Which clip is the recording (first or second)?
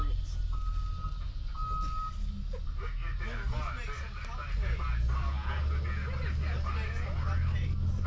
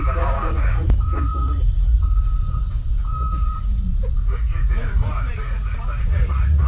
first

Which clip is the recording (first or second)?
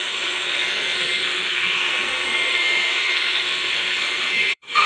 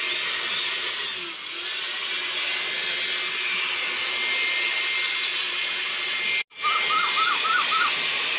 second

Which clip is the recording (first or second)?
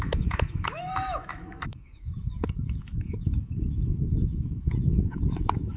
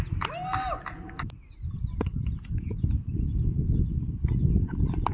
second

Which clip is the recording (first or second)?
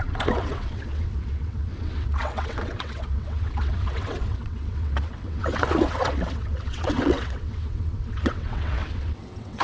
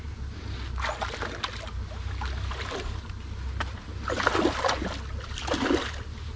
second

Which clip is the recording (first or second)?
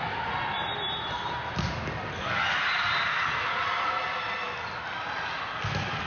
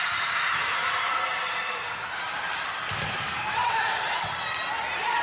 first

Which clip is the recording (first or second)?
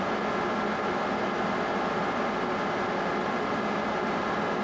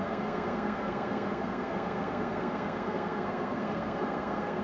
first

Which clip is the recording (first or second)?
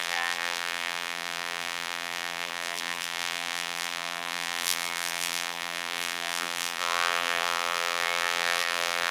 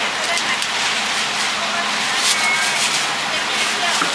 second